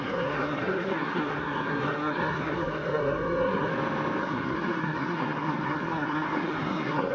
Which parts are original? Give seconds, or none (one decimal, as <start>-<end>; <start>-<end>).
3.7-4.2